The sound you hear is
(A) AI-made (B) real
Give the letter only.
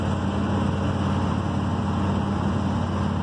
B